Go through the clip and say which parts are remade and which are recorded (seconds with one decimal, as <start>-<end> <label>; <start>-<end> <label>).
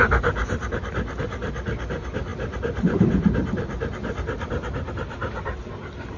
0.0-0.4 recorded; 0.4-1.2 remade; 1.2-2.3 recorded; 2.3-5.6 remade; 5.6-6.2 recorded